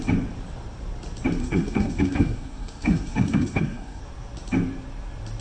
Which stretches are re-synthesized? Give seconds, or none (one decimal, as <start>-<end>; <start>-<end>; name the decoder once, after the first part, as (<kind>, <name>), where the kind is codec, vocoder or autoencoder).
1.4-4.0 (codec, SNAC)